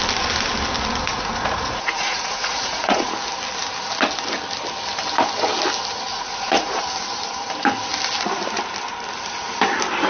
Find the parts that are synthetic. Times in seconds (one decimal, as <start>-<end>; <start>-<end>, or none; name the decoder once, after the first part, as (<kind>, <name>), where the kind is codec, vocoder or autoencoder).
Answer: 1.1-3.1 (vocoder, Vocos); 6.1-6.8